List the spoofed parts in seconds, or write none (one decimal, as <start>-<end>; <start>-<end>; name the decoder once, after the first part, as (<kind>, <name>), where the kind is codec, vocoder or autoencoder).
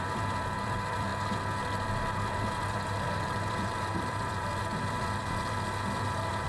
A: 0.0-1.1 (vocoder, BigVGAN v2); 2.0-6.5